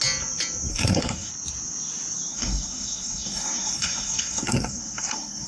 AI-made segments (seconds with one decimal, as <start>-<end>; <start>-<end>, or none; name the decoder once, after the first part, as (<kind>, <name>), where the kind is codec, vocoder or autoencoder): 0.7-1.3 (codec, SNAC); 2.3-5.5